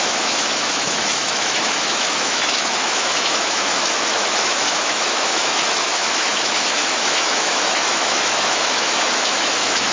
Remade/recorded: remade